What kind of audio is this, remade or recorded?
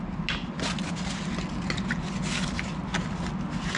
recorded